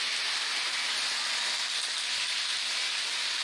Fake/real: real